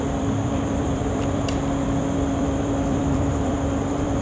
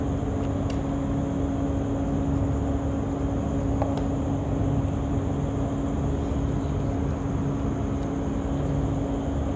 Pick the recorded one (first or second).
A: second